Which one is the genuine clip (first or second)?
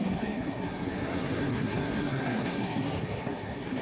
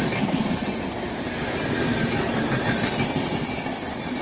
second